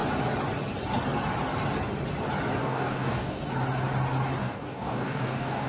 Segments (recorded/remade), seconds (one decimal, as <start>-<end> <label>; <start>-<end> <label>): 0.0-2.6 recorded; 2.6-3.4 remade; 3.4-4.4 recorded; 4.4-5.7 remade